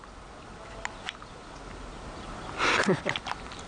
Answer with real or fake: real